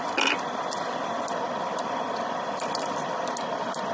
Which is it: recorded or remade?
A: recorded